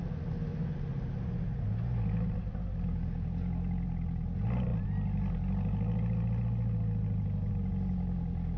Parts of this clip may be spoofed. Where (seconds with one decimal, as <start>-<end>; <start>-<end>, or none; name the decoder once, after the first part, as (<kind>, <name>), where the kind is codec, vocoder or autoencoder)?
none